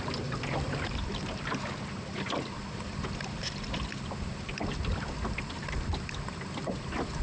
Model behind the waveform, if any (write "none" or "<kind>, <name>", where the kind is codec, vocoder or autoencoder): none